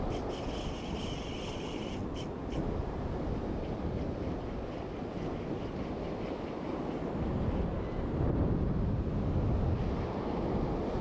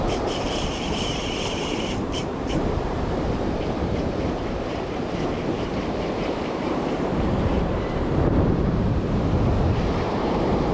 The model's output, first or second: second